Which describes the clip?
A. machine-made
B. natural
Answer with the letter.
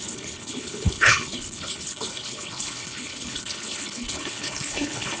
A